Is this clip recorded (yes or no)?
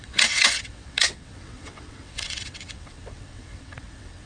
no